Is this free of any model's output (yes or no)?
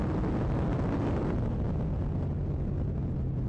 yes